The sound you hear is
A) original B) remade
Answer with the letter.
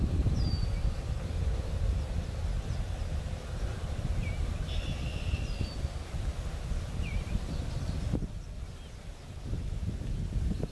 A